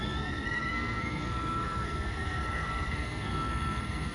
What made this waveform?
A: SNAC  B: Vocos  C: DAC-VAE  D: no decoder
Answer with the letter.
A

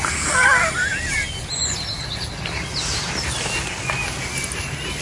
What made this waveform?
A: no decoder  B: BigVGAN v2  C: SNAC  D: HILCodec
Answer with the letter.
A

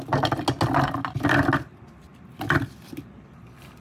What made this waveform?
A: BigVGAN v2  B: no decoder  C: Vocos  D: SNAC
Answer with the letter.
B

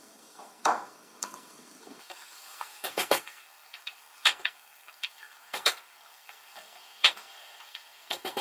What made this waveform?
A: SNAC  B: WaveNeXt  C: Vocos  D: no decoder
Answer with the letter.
A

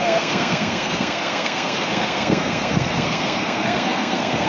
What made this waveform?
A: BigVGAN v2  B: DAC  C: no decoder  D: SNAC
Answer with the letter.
D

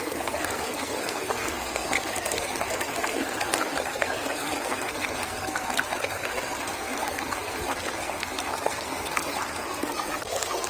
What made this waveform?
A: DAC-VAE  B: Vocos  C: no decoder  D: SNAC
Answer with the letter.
D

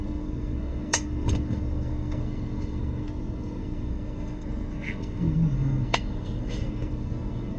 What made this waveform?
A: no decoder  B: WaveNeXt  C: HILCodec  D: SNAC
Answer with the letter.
D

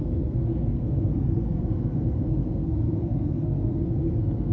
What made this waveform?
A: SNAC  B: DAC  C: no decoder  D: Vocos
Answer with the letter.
A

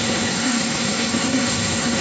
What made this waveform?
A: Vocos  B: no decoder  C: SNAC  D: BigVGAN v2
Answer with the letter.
C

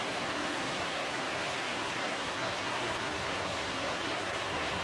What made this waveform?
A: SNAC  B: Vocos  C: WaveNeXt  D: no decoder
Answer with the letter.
A